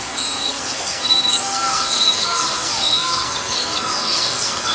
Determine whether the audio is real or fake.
fake